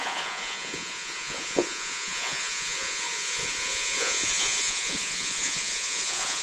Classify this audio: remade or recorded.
remade